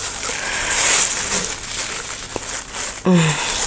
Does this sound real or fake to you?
real